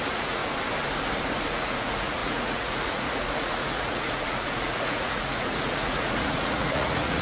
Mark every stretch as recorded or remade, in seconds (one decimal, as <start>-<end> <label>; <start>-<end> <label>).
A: 0.0-0.4 remade; 0.4-1.5 recorded; 1.5-7.2 remade